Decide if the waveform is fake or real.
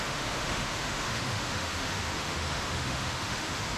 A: fake